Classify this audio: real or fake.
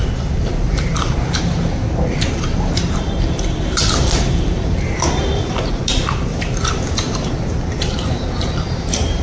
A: fake